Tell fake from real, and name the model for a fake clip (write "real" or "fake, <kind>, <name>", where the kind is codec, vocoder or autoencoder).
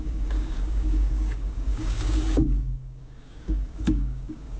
fake, codec, DAC